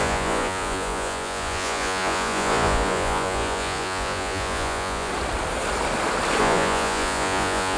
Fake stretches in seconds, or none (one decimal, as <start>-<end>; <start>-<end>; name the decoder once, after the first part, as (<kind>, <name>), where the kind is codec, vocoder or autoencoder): 0.0-5.1 (vocoder, Vocos); 6.4-7.8